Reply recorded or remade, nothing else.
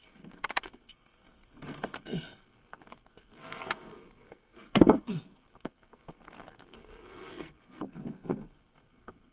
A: remade